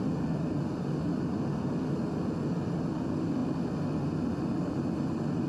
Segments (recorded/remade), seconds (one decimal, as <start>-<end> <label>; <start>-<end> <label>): 0.0-5.5 recorded